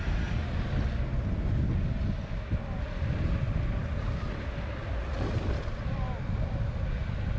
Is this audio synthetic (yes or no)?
no